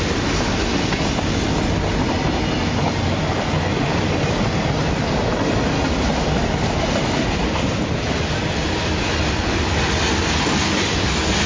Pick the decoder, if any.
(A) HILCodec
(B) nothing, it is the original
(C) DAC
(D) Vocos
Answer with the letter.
B